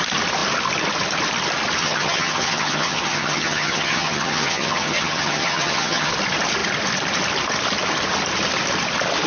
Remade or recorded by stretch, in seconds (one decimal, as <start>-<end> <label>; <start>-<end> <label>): 0.0-1.8 recorded; 1.8-6.1 remade; 6.1-9.3 recorded